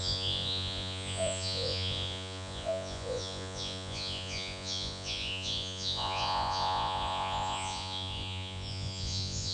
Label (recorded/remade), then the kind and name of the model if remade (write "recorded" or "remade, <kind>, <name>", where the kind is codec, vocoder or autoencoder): remade, vocoder, Vocos